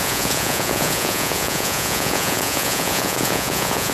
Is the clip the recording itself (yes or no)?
no